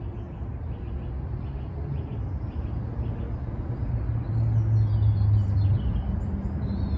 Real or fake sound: real